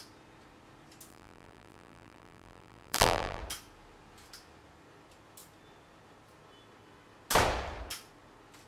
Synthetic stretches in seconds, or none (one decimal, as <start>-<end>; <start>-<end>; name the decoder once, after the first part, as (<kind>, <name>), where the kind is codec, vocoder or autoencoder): 1.1-3.4 (vocoder, BigVGAN v2)